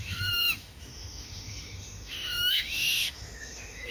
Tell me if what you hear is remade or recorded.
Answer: remade